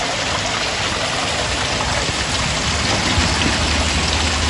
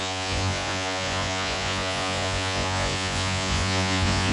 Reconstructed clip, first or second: second